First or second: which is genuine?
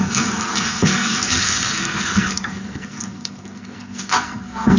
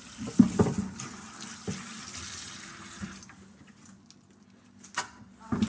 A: second